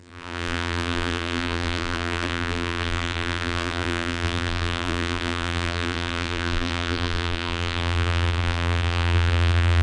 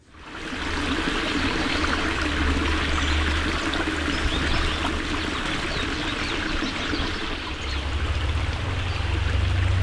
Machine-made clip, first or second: first